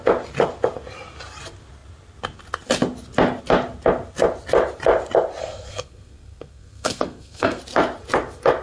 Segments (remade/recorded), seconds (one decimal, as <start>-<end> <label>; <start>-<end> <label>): 0.0-5.4 recorded; 5.4-7.6 remade; 7.6-8.6 recorded